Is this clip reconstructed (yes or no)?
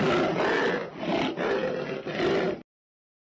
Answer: no